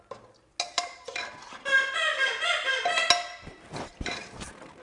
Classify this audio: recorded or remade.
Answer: recorded